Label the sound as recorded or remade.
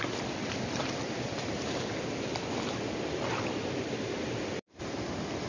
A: remade